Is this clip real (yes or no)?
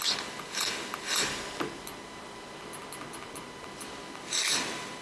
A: yes